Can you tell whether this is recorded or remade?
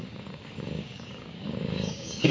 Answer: remade